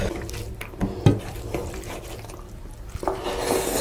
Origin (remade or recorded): remade